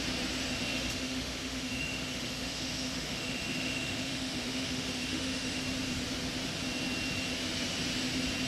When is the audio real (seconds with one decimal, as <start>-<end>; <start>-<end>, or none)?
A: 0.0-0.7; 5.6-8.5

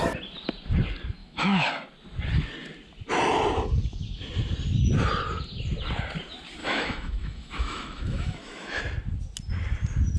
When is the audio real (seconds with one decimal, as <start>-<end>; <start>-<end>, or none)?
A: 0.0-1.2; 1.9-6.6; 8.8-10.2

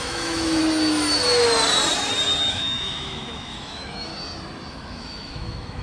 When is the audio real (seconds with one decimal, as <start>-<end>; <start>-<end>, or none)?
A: 0.6-2.5; 4.1-4.7

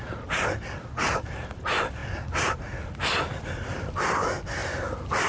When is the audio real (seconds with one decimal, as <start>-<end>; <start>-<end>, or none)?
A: 0.0-5.3

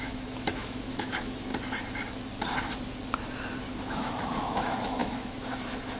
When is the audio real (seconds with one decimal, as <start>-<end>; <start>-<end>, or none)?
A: 1.5-3.7

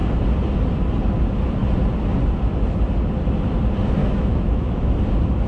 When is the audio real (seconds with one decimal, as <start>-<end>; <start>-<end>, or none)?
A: 0.0-4.0; 4.9-5.5

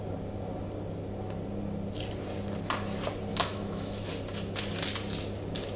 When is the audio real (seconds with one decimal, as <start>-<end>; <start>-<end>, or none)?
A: 0.0-3.3; 4.1-5.8

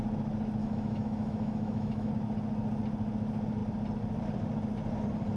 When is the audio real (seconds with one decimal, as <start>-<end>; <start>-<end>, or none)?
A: 0.0-0.6; 2.1-5.4